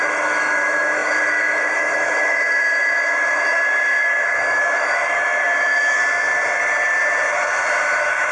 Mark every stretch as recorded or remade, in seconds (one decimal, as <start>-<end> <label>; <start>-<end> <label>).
0.0-6.0 remade; 6.0-7.8 recorded; 7.8-8.3 remade